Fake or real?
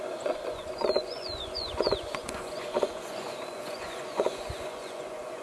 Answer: fake